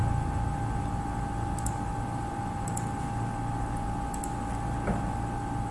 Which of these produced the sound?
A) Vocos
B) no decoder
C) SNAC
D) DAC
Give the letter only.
B